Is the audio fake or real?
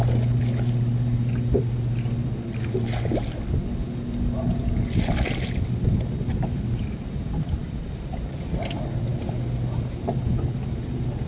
real